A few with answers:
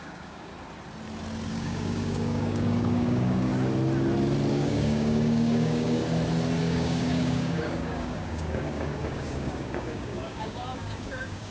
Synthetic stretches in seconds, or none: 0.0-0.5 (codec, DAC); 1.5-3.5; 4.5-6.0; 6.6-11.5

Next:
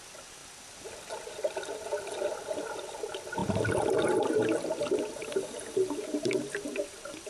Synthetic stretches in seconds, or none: none